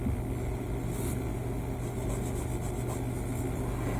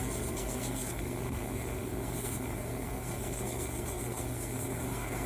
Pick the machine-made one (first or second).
second